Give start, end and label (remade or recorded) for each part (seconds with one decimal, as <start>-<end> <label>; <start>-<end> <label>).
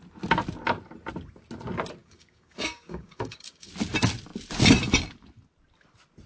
0.0-2.0 recorded; 2.0-3.7 remade; 3.7-6.3 recorded